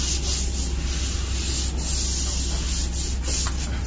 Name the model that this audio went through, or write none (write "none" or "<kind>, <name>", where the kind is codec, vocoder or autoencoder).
none